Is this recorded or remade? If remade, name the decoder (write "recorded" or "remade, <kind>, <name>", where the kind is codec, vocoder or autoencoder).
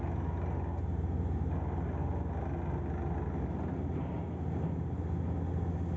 recorded